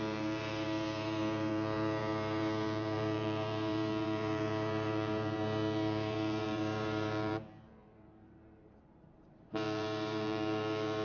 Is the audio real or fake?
fake